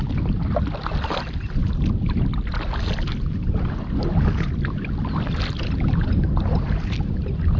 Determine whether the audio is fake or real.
real